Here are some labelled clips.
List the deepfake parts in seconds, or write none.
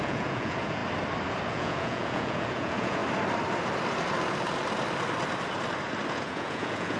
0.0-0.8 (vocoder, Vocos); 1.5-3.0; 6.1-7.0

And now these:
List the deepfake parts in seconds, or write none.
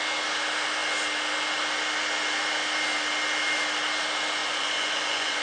4.4-5.4 (vocoder, Vocos)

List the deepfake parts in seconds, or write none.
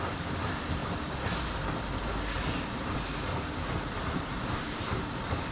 4.3-4.8 (vocoder, BigVGAN v2)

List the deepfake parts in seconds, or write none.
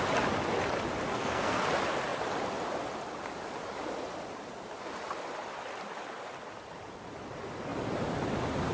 1.1-1.6 (codec, SNAC)